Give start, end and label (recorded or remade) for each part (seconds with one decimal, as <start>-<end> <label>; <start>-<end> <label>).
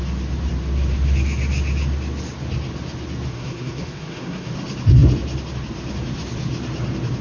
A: 0.0-3.3 recorded; 3.3-4.5 remade; 4.5-7.2 recorded